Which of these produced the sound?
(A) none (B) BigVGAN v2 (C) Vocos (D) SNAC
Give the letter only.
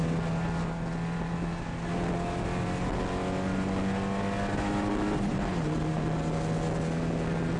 A